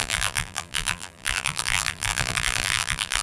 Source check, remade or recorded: remade